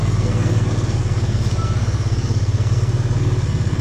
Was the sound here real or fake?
fake